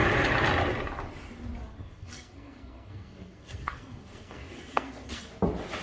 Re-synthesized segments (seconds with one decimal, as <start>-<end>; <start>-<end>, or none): 1.8-5.3